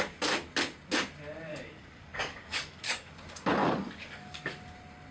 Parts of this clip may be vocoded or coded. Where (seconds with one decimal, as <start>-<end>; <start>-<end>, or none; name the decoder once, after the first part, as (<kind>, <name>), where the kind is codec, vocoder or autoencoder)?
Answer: 1.5-3.1 (codec, DAC); 3.6-4.5